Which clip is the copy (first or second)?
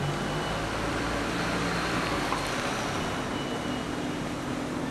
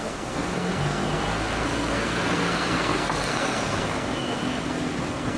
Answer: second